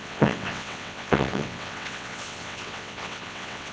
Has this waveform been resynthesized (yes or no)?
yes